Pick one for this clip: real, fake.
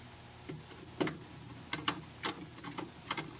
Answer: real